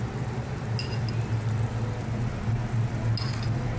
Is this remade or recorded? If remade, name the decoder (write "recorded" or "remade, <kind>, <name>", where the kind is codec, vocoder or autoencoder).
recorded